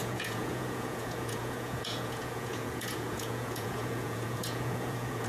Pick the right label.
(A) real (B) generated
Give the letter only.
B